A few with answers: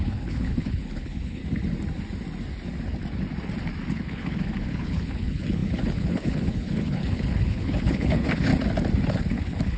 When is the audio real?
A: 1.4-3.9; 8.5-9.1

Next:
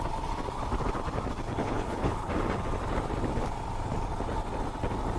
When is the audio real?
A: 0.0-1.6; 2.3-5.2

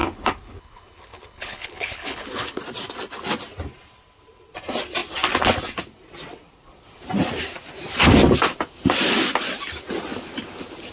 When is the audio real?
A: 2.6-10.9

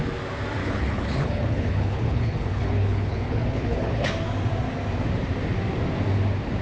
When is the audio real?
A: 0.0-0.6; 4.1-6.6

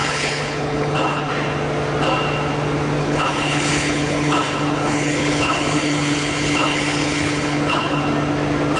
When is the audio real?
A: 1.3-3.0; 8.0-8.8